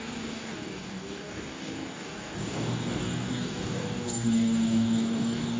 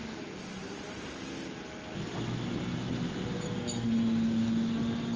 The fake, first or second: first